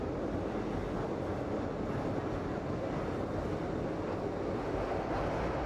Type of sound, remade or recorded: recorded